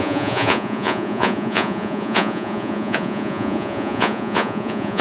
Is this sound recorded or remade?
remade